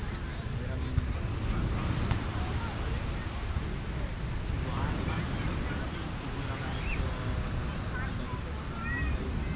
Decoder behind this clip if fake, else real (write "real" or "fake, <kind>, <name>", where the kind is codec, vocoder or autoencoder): real